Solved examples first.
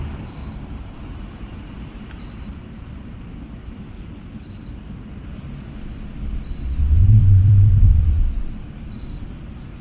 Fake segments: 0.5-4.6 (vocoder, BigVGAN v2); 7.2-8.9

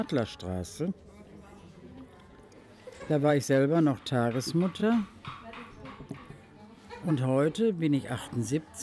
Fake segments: 1.3-3.3 (vocoder, Vocos)

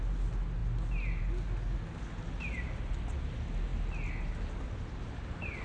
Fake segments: none

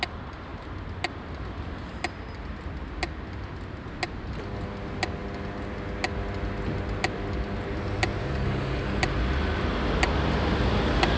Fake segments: 8.2-9.0 (codec, DAC)

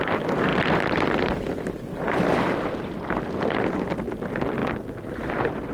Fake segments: 0.5-3.9 (vocoder, BigVGAN v2)

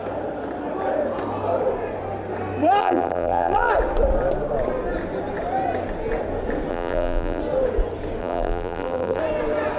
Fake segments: 2.8-3.7 (vocoder, BigVGAN v2); 6.7-7.4; 8.2-9.2

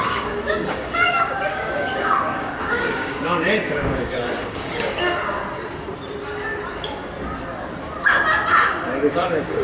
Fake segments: 0.0-5.4 (codec, DAC); 9.1-9.6

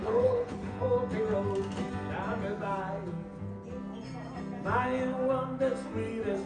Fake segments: 0.0-0.8 (codec, HILCodec)